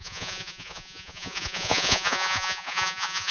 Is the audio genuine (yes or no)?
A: no